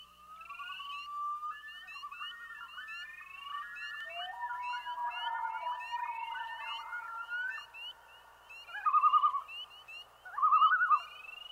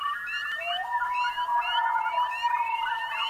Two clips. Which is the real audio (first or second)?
first